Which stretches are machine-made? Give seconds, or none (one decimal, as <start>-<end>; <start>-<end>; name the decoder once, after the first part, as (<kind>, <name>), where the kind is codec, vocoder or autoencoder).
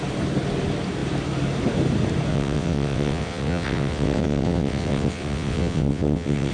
2.3-6.5 (vocoder, WaveNeXt)